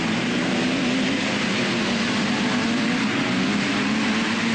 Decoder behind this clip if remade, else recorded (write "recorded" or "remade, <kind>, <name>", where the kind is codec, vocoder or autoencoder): recorded